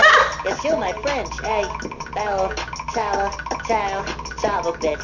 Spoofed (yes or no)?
no